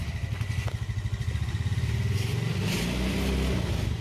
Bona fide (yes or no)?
yes